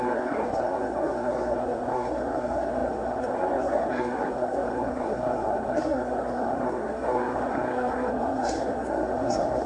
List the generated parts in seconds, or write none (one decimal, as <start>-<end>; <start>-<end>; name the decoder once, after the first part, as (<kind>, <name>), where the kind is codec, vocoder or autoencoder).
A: 0.0-9.7 (codec, SNAC)